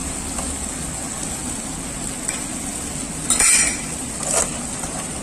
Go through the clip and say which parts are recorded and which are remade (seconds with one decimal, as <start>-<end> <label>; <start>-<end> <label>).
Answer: 0.0-5.2 recorded